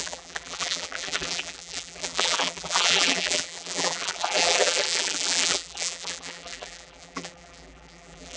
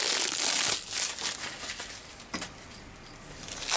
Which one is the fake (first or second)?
first